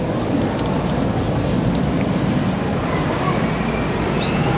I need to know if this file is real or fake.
real